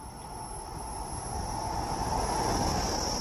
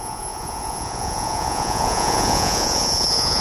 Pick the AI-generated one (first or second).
second